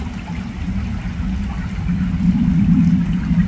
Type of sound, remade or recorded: recorded